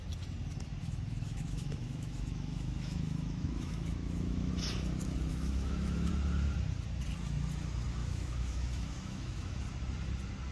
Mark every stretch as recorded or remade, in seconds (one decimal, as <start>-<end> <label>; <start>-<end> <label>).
0.0-0.8 recorded; 0.8-4.5 remade; 4.5-5.3 recorded; 5.3-6.1 remade; 6.1-8.0 recorded; 8.0-9.6 remade; 9.6-10.5 recorded